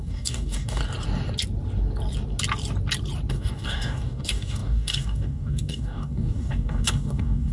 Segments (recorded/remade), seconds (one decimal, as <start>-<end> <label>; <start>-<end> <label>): 0.0-0.8 remade; 0.8-3.3 recorded; 3.3-7.5 remade